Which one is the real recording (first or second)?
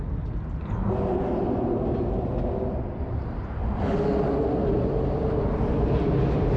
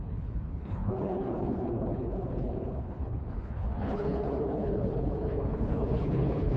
first